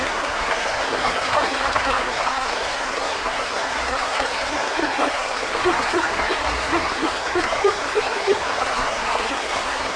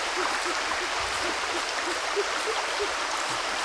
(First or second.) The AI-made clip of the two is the first